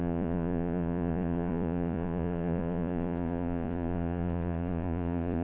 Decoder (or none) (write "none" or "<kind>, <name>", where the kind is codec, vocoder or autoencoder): vocoder, Vocos